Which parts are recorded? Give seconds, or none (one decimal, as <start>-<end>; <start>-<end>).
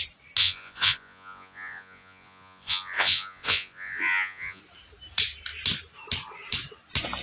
0.0-0.4; 4.6-7.2